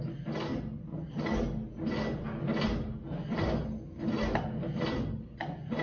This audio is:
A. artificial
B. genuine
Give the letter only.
B